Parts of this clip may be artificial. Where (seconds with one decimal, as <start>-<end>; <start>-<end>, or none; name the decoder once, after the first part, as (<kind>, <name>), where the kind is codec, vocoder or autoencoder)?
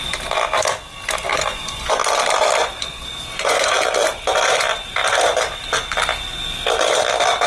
1.3-1.9 (vocoder, Vocos); 2.6-3.7